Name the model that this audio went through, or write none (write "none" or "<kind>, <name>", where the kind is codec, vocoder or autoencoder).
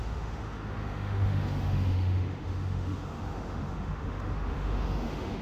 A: autoencoder, DAC-VAE